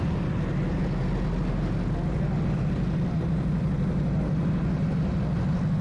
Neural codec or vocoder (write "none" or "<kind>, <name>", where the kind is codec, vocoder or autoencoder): none